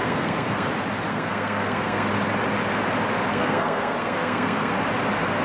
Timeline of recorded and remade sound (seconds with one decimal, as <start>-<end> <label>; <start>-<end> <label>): 0.0-0.7 remade; 0.7-1.1 recorded; 1.1-2.1 remade; 2.1-3.3 recorded; 3.3-4.7 remade; 4.7-5.4 recorded